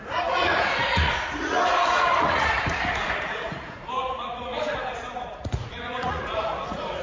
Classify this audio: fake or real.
fake